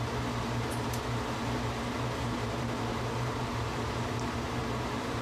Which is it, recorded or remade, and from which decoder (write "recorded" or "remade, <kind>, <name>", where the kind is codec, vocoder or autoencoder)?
remade, vocoder, BigVGAN v2